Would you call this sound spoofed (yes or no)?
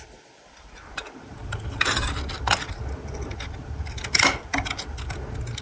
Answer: yes